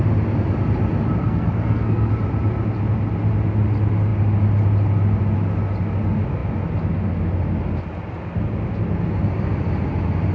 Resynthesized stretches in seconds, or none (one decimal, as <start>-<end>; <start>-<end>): 1.2-2.1